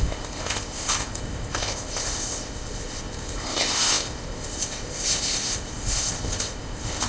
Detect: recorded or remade remade